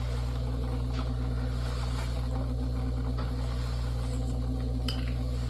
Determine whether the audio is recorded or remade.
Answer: recorded